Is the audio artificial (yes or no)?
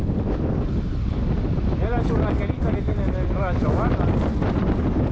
no